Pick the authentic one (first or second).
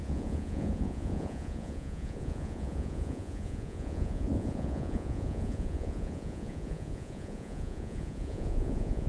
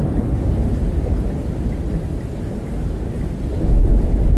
second